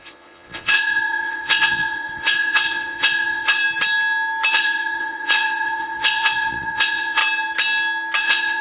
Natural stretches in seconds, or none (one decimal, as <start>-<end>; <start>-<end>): 3.6-4.5; 7.2-8.2